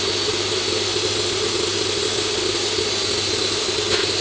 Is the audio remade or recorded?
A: recorded